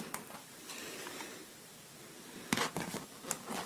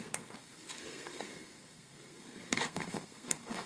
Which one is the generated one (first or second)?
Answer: second